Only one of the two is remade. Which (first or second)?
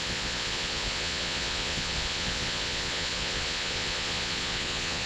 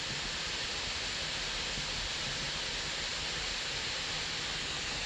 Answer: first